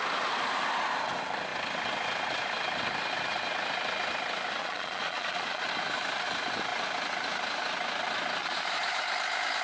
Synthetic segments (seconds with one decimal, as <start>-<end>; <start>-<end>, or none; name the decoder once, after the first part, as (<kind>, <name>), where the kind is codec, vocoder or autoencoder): 4.6-5.7 (vocoder, Vocos); 8.4-9.0